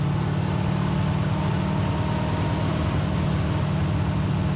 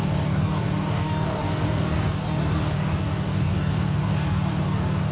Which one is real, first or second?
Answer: first